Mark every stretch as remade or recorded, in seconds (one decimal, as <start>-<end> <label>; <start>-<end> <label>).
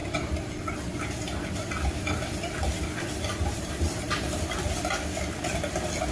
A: 0.0-6.1 recorded